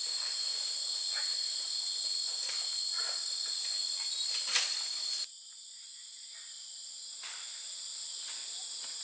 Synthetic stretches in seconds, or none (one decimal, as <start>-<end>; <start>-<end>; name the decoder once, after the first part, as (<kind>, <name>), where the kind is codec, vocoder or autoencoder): none